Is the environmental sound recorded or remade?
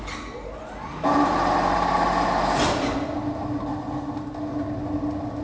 recorded